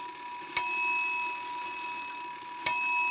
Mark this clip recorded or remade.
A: recorded